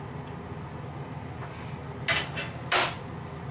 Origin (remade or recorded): recorded